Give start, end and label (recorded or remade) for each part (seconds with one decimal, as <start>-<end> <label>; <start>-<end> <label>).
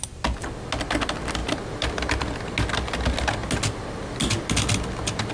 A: 0.0-5.3 recorded